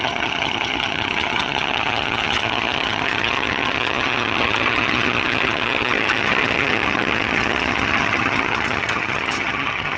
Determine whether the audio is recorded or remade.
remade